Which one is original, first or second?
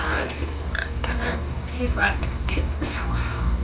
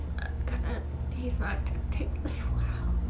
second